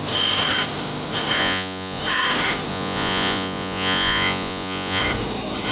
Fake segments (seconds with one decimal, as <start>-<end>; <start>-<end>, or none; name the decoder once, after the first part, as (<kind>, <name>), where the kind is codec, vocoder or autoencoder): 1.4-2.0 (vocoder, Vocos); 2.7-5.0